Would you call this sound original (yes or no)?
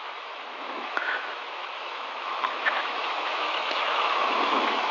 no